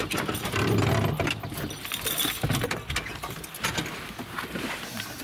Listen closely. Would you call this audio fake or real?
real